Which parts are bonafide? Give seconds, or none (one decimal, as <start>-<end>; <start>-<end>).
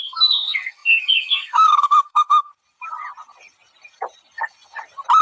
2.5-5.2